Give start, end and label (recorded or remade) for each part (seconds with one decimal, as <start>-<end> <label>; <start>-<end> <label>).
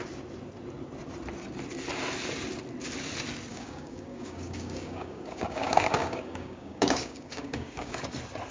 0.0-3.5 recorded; 3.5-8.0 remade; 8.0-8.5 recorded